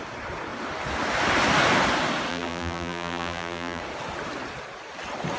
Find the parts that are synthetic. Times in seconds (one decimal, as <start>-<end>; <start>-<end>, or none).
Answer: 2.3-3.8